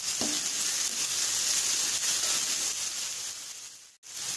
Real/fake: real